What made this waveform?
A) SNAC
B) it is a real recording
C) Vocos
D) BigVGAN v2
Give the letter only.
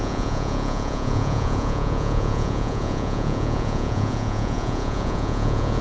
C